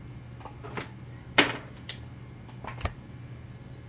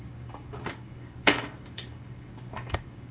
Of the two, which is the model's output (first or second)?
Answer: second